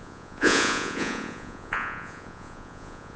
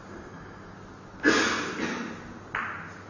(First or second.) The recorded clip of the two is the second